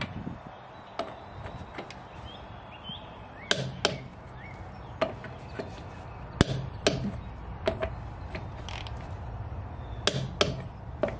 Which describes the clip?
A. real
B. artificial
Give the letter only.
A